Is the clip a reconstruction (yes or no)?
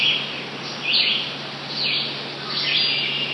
no